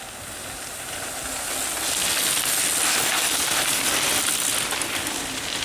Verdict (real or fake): real